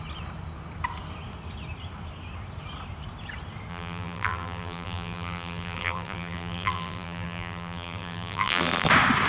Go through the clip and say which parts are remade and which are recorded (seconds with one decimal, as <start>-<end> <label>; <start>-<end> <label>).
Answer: 0.0-3.7 recorded; 3.7-8.9 remade; 8.9-9.3 recorded